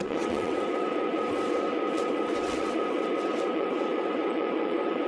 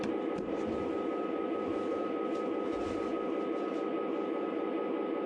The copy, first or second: first